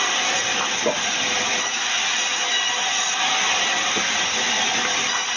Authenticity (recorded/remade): recorded